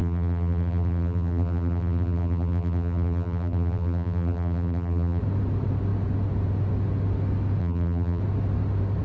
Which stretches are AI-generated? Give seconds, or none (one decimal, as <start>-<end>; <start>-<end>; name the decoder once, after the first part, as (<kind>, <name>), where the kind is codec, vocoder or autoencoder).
0.0-5.2 (vocoder, BigVGAN v2); 7.6-8.2